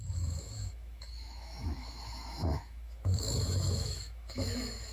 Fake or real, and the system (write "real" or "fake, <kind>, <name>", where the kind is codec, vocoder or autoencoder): fake, autoencoder, DAC-VAE